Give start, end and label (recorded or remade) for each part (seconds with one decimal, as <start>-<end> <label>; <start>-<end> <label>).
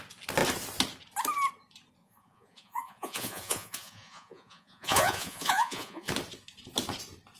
0.0-2.0 recorded; 2.0-6.1 remade; 6.1-7.4 recorded